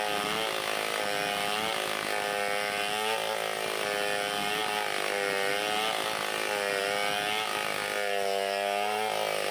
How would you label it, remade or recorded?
recorded